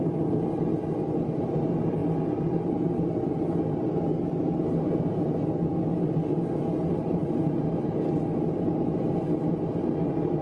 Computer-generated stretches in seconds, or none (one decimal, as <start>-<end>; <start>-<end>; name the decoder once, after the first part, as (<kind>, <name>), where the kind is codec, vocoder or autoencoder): none